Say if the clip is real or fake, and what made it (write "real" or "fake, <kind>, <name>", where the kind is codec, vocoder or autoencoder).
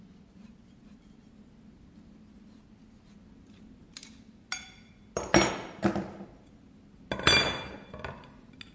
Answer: real